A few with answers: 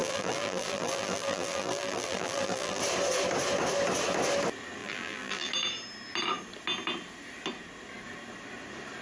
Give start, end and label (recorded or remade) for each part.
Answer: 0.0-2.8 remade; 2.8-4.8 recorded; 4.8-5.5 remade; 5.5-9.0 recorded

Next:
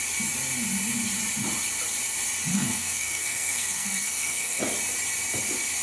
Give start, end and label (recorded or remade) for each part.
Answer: 0.0-2.5 recorded; 2.5-4.6 remade; 4.6-5.8 recorded

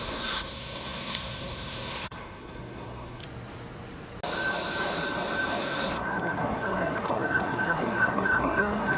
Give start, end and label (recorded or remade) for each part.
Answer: 0.0-3.2 remade; 3.2-5.6 recorded; 5.6-9.0 remade

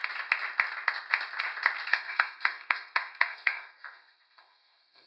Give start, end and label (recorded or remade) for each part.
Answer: 0.0-1.9 recorded; 1.9-5.1 remade

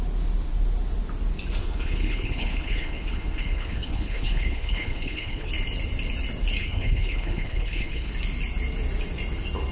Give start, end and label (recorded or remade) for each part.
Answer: 0.0-1.6 recorded; 1.6-5.5 remade; 5.5-6.6 recorded; 6.6-8.1 remade; 8.1-9.7 recorded

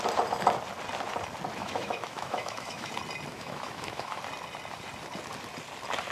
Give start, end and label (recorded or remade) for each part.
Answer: 0.0-1.6 recorded; 1.6-2.9 remade; 2.9-3.3 recorded; 3.3-4.2 remade; 4.2-6.1 recorded